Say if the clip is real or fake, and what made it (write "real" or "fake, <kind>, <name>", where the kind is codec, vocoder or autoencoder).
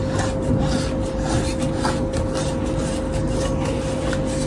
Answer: real